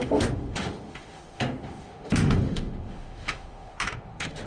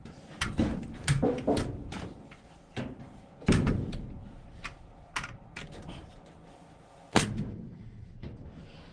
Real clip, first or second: second